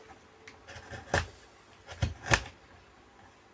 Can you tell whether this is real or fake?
real